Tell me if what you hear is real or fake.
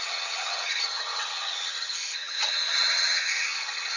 fake